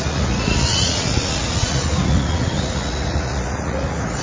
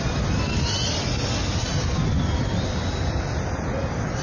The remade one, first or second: first